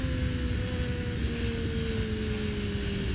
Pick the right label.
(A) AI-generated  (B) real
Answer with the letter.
B